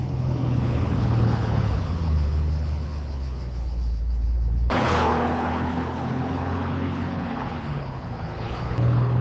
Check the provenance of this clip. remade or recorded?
remade